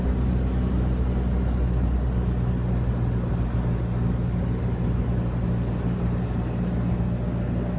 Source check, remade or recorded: recorded